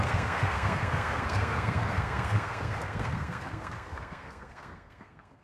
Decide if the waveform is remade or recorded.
remade